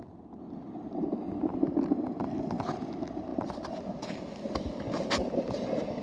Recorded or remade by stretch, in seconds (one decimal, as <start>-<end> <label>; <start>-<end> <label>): 0.0-6.0 recorded